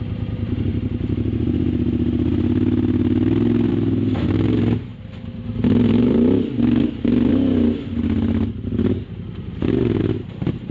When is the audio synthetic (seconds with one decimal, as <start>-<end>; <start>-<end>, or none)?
0.0-0.7; 3.7-4.9; 10.0-10.7